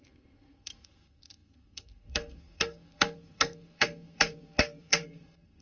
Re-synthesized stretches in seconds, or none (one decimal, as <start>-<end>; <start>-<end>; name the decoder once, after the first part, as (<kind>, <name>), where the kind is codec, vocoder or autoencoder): 0.0-5.6 (codec, SNAC)